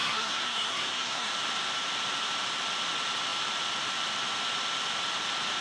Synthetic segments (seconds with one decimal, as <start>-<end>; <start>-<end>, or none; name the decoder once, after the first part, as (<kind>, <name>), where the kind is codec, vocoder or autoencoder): 0.0-1.3 (codec, SNAC)